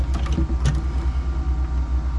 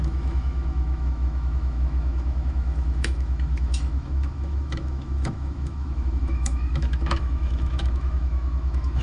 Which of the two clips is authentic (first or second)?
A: first